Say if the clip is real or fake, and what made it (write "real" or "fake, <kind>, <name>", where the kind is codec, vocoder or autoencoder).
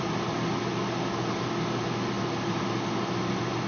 real